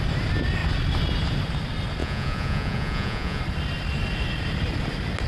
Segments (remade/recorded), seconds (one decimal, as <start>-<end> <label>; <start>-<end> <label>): 0.0-2.0 recorded; 2.0-3.4 remade; 3.4-5.3 recorded